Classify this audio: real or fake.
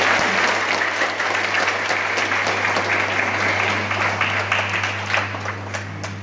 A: real